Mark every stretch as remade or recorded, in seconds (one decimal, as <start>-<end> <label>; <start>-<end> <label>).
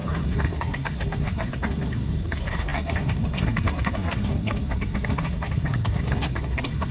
0.0-6.9 remade